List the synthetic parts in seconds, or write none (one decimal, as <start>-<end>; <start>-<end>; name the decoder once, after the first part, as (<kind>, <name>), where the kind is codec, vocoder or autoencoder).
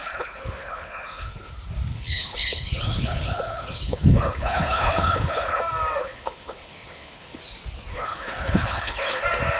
0.0-1.5 (codec, HILCodec); 1.9-5.6; 6.0-7.4; 7.9-9.2